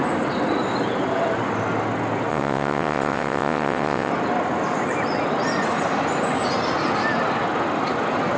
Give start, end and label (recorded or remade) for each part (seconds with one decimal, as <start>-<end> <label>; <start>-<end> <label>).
0.0-2.3 recorded; 2.3-4.1 remade; 4.1-8.4 recorded